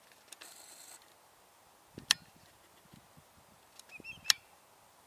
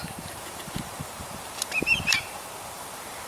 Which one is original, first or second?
first